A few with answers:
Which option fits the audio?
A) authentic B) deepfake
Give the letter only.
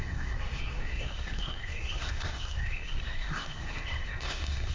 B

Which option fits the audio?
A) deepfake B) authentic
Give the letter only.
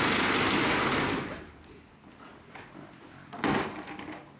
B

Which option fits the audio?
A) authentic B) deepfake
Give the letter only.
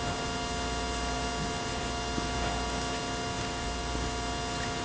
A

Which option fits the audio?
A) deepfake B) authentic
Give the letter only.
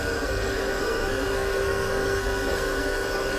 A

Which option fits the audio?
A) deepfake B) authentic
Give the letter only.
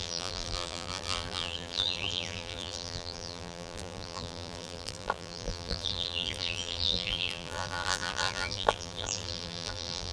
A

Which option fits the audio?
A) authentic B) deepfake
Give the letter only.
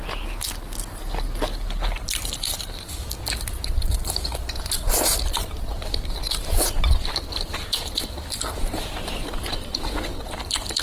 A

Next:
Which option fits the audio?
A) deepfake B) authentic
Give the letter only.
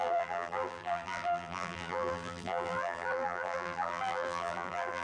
A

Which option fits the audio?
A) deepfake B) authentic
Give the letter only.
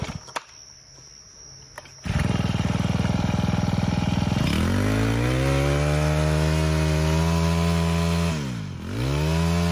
B